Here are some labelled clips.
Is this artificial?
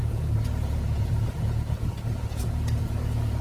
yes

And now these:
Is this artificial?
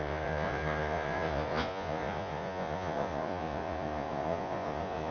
yes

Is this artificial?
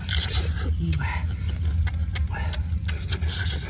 no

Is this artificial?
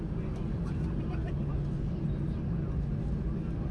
no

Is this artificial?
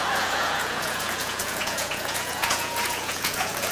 yes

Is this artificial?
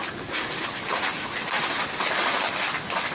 no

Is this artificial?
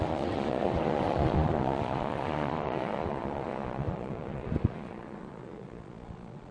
yes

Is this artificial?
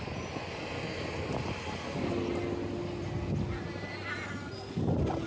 no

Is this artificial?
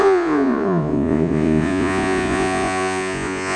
yes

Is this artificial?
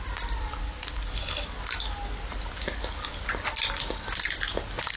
no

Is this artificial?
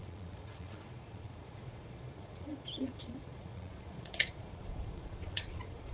yes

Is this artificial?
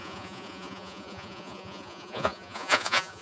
yes